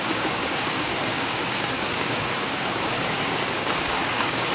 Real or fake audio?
fake